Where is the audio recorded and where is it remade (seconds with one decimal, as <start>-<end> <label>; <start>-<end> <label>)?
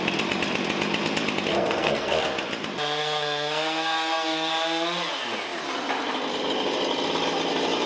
0.0-1.5 recorded; 1.5-2.2 remade; 2.2-3.0 recorded; 3.0-4.5 remade; 4.5-7.9 recorded